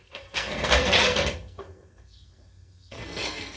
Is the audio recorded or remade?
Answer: remade